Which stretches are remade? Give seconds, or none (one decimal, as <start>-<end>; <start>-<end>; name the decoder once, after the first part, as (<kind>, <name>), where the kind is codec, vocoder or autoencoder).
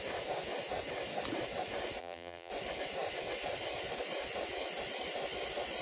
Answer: 2.0-2.5 (vocoder, BigVGAN v2)